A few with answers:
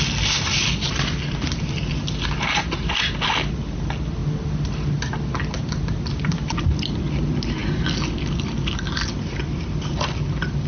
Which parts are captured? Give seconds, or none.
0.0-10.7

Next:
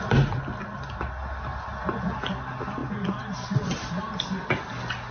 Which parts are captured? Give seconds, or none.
0.0-5.1

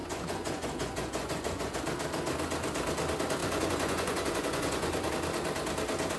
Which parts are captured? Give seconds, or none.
1.8-3.4; 5.1-6.2

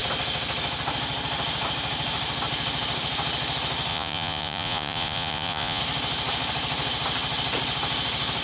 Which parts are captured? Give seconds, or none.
0.0-3.9; 5.8-8.4

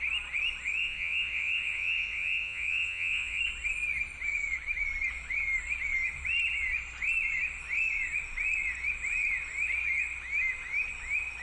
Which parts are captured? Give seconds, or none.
0.0-0.8; 3.4-11.4

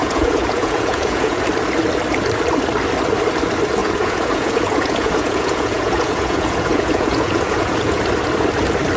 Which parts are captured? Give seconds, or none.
1.4-3.8; 8.0-9.0

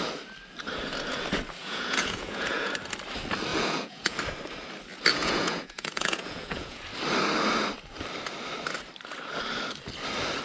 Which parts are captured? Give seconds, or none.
0.0-1.6; 2.7-3.5; 4.2-5.2; 6.9-10.4